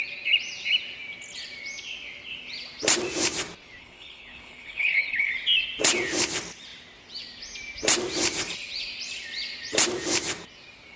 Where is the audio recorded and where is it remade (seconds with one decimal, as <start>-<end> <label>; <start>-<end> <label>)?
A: 0.0-3.8 recorded; 3.8-5.3 remade; 5.3-11.0 recorded